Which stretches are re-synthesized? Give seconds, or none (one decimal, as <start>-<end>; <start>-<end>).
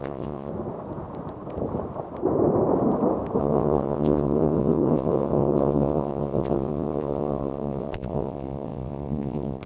0.0-0.5; 3.4-9.7